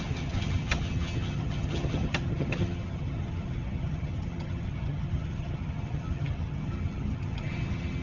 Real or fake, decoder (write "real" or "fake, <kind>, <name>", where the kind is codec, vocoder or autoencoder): fake, vocoder, HiFi-GAN